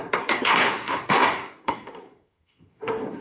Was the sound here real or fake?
fake